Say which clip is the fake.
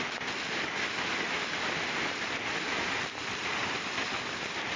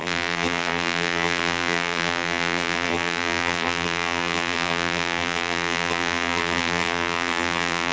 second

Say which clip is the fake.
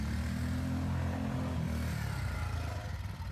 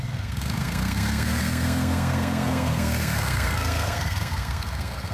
second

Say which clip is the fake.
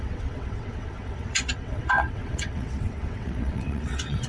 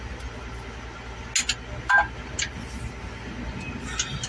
first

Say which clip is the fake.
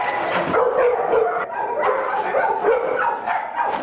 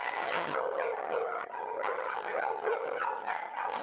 second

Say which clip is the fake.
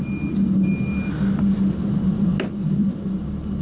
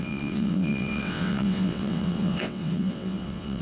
second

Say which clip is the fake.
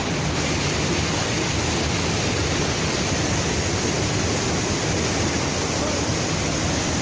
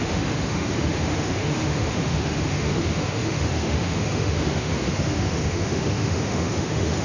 second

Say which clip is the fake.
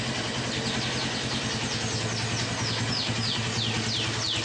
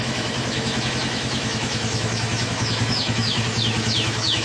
second